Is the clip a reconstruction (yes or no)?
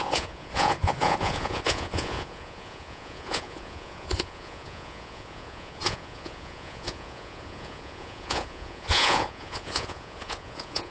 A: yes